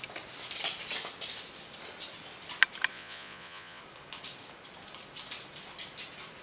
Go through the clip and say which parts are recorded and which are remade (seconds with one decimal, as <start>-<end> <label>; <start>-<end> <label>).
0.0-2.9 recorded; 2.9-3.8 remade; 3.8-6.4 recorded